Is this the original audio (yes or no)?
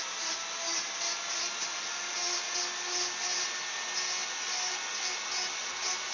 yes